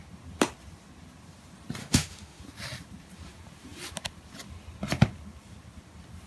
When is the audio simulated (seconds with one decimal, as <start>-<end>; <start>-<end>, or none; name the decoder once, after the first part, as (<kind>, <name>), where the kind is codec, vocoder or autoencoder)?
1.8-2.4 (autoencoder, DAC-VAE)